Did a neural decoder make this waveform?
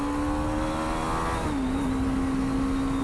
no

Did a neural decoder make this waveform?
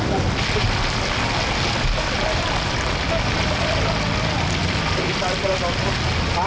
no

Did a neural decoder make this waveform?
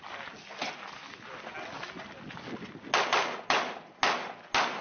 no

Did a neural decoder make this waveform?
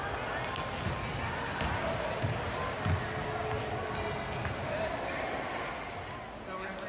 no